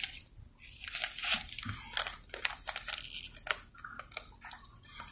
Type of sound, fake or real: real